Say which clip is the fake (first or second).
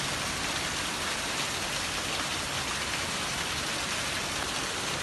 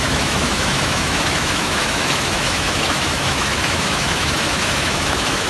second